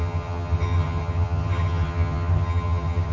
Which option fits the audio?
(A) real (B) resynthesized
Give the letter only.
B